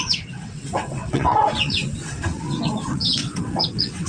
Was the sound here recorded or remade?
remade